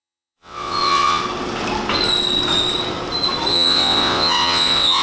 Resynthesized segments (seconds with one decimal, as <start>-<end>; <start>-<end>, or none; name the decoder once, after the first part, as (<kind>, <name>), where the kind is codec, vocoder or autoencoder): 0.0-1.2 (vocoder, WaveNeXt); 3.5-5.0